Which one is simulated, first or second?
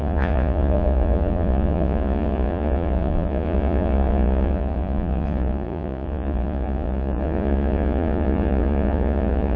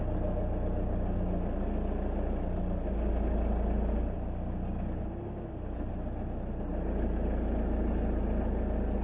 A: first